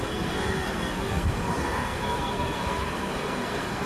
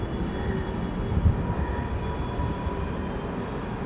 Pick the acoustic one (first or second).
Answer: second